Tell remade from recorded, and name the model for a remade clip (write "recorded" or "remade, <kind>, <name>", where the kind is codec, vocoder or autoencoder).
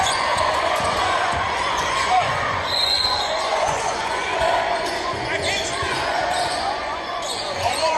remade, vocoder, Vocos